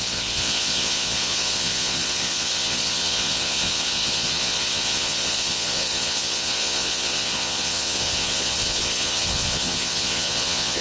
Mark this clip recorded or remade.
remade